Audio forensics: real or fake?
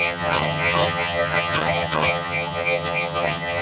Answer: fake